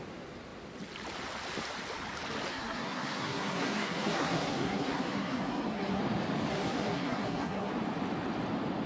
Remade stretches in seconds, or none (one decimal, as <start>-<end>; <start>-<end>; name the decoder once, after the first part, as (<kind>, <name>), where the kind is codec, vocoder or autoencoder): 2.5-6.0 (codec, SNAC); 6.5-7.7